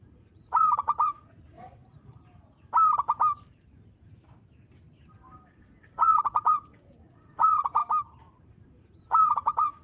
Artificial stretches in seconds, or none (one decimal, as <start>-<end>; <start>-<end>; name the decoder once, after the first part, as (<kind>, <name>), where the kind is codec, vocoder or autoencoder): 0.0-1.8 (vocoder, Vocos); 5.5-7.8; 8.4-9.8